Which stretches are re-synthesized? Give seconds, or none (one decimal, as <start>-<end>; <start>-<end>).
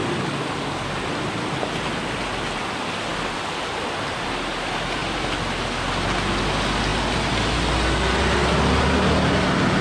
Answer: none